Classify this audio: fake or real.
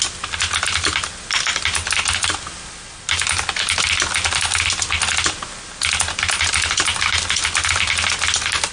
real